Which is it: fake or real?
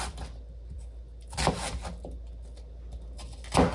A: real